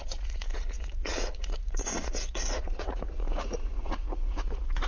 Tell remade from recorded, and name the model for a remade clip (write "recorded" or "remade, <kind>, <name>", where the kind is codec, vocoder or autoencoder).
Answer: remade, vocoder, Vocos